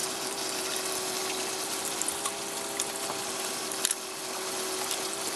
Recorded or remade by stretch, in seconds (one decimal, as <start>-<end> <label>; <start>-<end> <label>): 0.0-1.8 recorded; 1.8-4.2 remade; 4.2-5.4 recorded

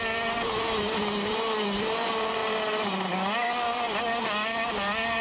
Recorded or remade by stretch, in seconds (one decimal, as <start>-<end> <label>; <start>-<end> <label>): 0.0-2.4 remade; 2.4-3.4 recorded; 3.4-5.2 remade

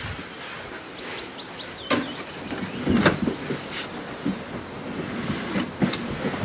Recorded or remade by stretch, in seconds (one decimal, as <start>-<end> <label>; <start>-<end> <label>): 0.0-6.4 recorded

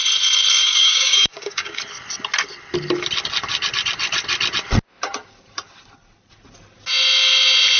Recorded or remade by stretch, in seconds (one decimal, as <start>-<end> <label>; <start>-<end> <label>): 0.0-0.6 recorded; 0.6-1.8 remade; 1.8-7.8 recorded

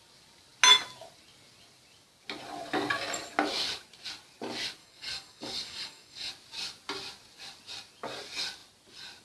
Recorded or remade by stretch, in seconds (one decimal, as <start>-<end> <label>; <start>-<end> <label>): 0.0-4.8 recorded; 4.8-6.3 remade; 6.3-9.2 recorded